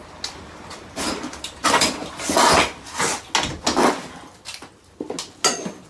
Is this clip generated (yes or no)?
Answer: no